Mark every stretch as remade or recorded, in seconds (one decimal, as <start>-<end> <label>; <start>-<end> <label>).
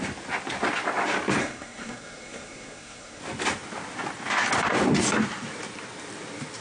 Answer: 0.0-1.4 recorded; 1.4-3.2 remade; 3.2-6.6 recorded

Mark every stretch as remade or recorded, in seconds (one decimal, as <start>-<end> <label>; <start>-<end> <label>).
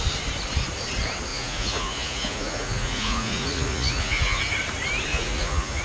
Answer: 0.0-1.3 recorded; 1.3-4.4 remade; 4.4-5.1 recorded; 5.1-5.8 remade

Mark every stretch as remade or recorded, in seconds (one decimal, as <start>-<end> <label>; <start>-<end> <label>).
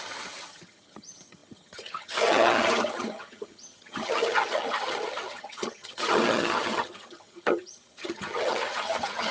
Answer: 0.0-9.3 remade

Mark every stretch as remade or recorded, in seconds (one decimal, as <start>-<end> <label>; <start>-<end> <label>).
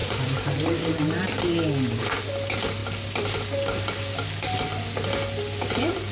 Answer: 0.0-1.5 remade; 1.5-6.1 recorded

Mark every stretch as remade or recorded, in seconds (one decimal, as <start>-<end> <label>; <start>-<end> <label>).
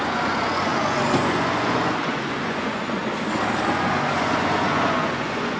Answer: 0.0-3.0 remade; 3.0-3.7 recorded; 3.7-5.6 remade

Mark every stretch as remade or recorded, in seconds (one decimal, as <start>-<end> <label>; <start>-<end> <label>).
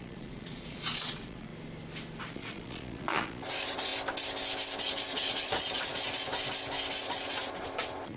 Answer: 0.0-1.5 remade; 1.5-2.2 recorded; 2.2-3.9 remade; 3.9-4.8 recorded; 4.8-6.3 remade; 6.3-7.0 recorded; 7.0-8.2 remade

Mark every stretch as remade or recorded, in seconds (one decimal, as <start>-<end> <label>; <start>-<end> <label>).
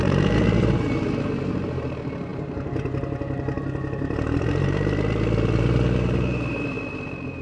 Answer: 0.0-7.4 remade